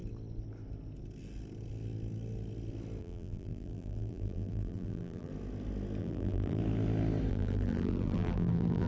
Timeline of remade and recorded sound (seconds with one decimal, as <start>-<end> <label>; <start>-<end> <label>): 0.0-3.0 recorded; 3.0-5.3 remade; 5.3-6.0 recorded; 6.0-6.6 remade; 6.6-7.3 recorded; 7.3-8.9 remade